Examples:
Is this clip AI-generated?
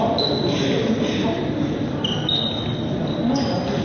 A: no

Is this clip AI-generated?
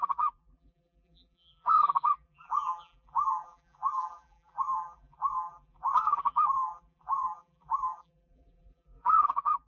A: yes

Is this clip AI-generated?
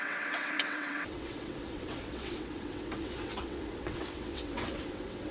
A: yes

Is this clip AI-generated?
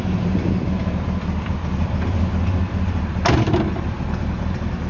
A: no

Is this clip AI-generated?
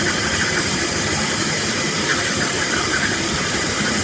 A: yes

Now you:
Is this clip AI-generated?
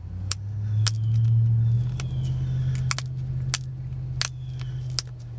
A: no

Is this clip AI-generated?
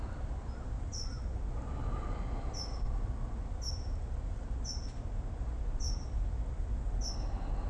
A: no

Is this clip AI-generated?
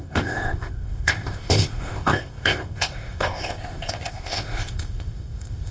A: yes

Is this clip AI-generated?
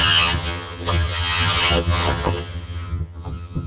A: yes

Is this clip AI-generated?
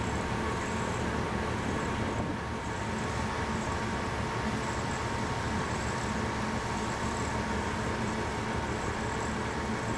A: no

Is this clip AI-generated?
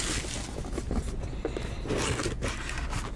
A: no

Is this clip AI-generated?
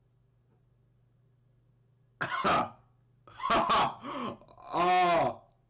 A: no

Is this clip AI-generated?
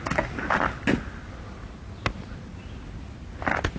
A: no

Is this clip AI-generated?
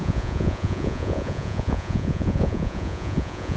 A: yes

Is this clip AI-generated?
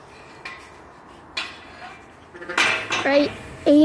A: no